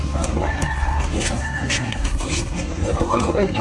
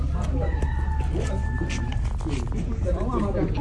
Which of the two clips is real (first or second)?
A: second